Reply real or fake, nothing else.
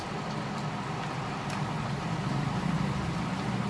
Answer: real